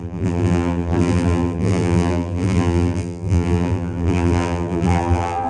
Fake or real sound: fake